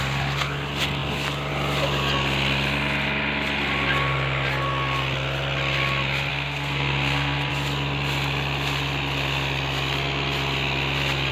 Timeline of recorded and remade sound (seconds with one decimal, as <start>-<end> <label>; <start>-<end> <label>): 0.0-6.3 recorded; 6.3-7.5 remade; 7.5-11.3 recorded